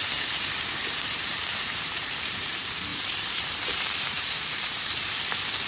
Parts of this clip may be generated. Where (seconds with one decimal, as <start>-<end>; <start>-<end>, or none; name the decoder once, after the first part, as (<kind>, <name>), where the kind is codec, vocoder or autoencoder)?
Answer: 0.0-2.5 (vocoder, BigVGAN v2); 2.9-5.1